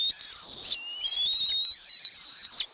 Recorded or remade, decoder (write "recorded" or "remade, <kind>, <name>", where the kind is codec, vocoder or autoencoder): recorded